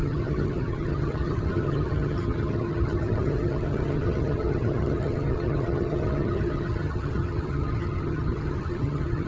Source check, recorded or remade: remade